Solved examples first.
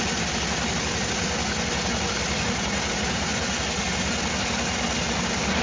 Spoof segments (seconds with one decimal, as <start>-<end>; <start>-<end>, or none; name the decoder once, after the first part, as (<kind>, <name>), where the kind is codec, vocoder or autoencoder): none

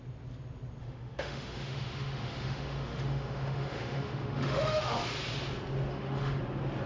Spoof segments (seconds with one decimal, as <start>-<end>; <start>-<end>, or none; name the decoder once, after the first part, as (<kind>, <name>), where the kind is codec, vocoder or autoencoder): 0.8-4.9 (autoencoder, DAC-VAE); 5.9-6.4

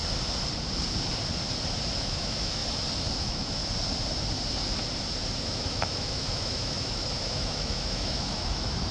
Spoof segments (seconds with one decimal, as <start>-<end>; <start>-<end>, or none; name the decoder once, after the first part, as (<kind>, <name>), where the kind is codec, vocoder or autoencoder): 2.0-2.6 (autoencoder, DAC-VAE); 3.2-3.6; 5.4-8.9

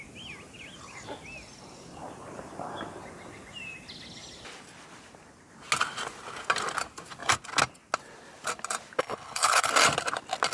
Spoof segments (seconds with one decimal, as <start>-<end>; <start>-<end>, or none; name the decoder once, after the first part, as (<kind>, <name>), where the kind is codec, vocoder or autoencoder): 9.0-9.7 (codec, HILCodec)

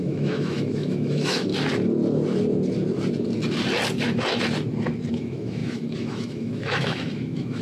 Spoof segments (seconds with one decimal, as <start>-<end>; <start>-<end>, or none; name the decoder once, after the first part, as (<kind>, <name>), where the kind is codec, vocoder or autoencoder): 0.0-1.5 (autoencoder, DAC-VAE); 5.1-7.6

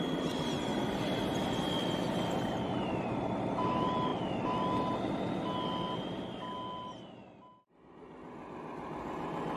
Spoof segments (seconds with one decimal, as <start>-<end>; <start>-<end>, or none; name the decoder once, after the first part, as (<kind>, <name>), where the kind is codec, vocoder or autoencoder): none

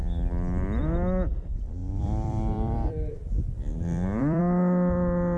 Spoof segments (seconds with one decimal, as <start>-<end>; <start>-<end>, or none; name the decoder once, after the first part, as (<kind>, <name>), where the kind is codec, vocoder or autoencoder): 0.0-0.8 (vocoder, BigVGAN v2); 1.8-4.4

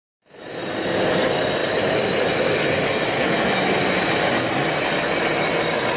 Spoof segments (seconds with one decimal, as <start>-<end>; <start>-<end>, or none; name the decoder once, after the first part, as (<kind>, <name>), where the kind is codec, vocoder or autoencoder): none